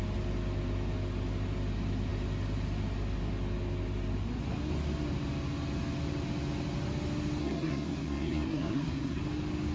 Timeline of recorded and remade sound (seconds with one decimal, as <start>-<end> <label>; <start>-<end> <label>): 0.0-7.4 recorded; 7.4-9.2 remade; 9.2-9.7 recorded